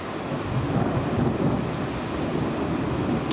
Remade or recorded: recorded